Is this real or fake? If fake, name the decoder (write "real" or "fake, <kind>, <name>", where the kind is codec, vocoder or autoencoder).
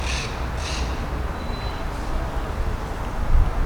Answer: real